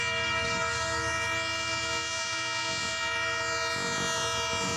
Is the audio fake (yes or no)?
no